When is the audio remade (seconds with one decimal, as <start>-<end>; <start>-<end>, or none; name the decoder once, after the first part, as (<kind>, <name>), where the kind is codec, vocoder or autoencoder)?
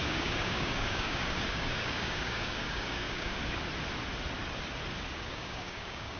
0.0-3.4 (codec, DAC); 5.2-6.2